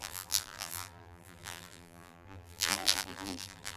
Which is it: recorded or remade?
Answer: remade